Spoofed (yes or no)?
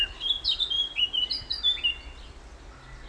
no